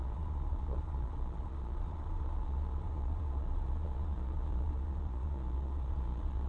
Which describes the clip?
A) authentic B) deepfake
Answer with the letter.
B